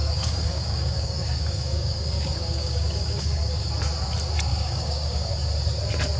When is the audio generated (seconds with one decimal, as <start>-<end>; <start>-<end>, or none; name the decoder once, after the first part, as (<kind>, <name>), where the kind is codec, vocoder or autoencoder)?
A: 0.0-3.7 (codec, DAC); 4.5-5.3